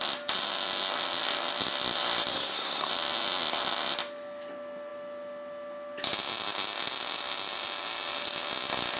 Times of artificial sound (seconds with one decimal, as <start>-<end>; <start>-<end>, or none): 2.3-2.9